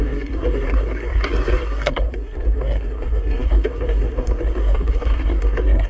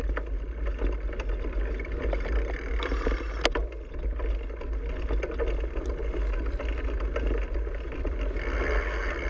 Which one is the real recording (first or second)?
second